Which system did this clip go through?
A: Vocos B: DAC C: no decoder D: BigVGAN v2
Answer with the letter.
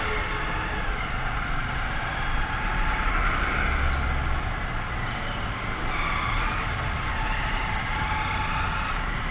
C